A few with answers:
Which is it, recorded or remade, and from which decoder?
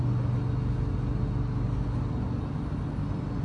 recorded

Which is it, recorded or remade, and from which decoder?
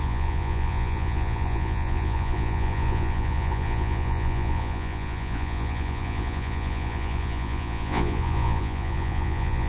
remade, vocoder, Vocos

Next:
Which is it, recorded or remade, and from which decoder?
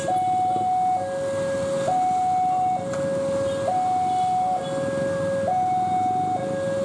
recorded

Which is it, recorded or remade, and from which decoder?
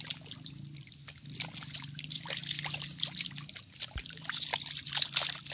recorded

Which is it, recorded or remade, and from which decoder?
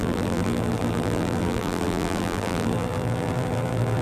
remade, vocoder, BigVGAN v2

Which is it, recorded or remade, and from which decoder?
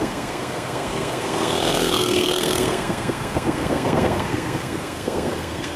remade, codec, SNAC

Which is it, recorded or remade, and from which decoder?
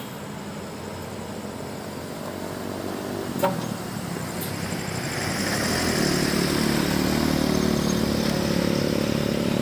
recorded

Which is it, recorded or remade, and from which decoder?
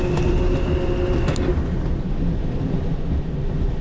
recorded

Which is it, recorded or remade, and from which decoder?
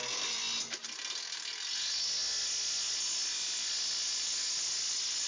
recorded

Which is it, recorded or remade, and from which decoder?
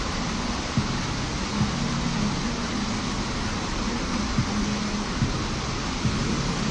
recorded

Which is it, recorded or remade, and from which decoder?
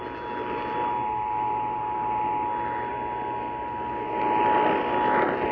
recorded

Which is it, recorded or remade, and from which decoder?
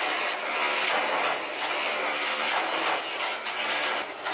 recorded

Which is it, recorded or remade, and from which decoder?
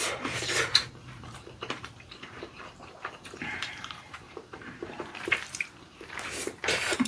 remade, vocoder, BigVGAN v2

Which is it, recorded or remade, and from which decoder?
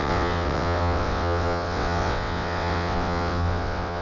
remade, vocoder, WaveNeXt